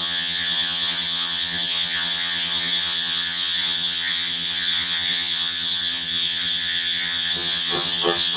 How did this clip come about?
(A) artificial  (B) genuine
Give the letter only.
A